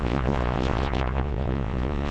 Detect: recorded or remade remade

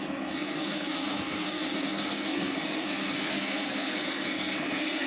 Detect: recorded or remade remade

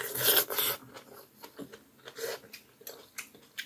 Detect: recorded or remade recorded